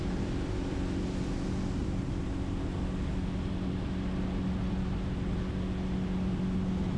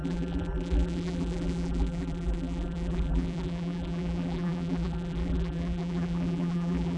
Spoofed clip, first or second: second